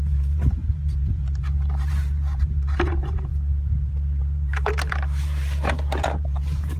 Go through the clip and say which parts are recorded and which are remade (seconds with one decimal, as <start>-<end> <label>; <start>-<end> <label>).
0.0-3.3 remade; 3.3-4.2 recorded; 4.2-6.8 remade